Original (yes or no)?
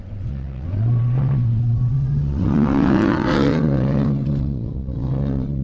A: no